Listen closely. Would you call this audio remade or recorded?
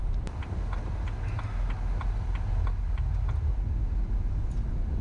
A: recorded